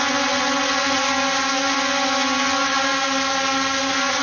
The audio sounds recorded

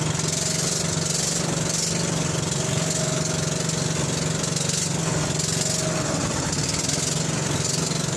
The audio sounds recorded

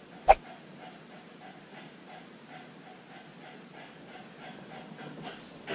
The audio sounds recorded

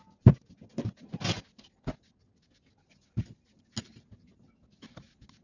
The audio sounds recorded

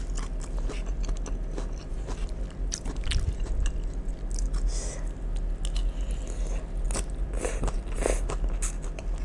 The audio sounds recorded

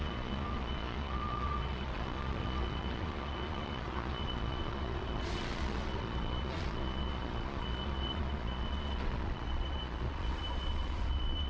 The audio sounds remade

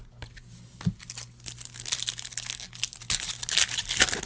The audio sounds recorded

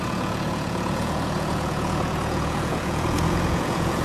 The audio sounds remade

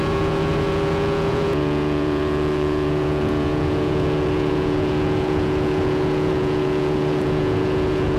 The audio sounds remade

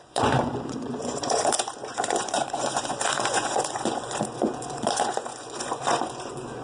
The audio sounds remade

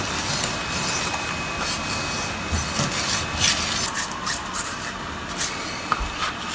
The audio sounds recorded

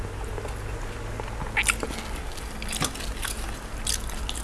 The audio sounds recorded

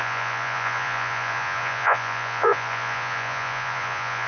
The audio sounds remade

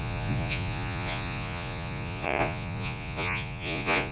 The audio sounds remade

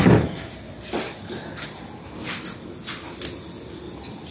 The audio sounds recorded